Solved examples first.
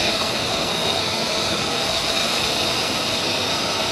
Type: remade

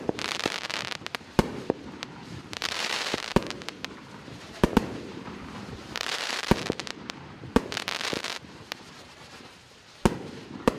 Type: remade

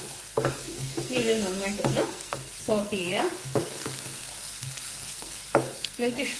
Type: remade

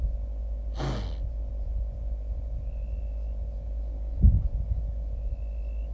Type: recorded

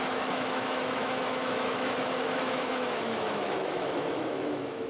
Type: remade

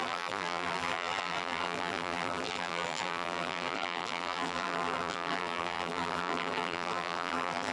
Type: remade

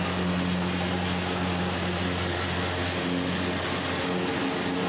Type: recorded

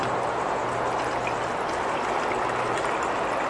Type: recorded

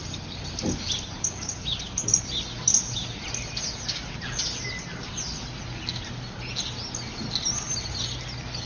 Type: recorded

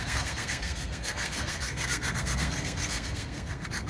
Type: remade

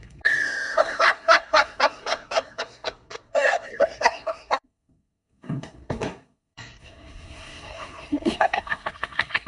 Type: remade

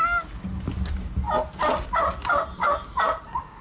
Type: recorded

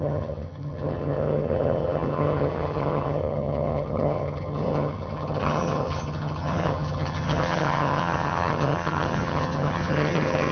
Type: remade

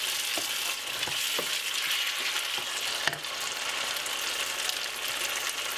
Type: recorded